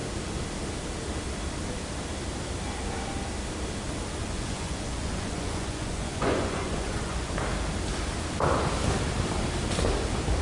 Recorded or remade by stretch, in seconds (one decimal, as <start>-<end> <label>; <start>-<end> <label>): 0.0-4.2 recorded; 4.2-7.3 remade; 7.3-10.4 recorded